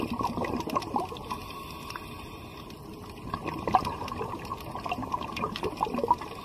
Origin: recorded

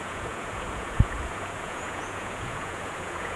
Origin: remade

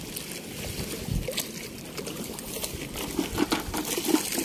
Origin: recorded